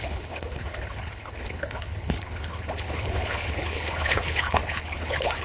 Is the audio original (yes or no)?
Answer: no